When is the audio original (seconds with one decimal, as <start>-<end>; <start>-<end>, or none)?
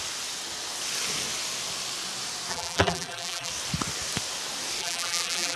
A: 0.0-2.5; 3.5-4.8